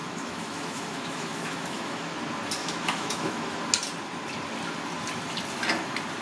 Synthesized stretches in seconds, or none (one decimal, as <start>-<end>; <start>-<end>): 0.0-2.1; 2.6-3.6